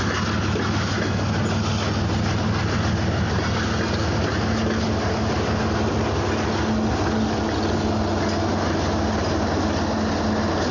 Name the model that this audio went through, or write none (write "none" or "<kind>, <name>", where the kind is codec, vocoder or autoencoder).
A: none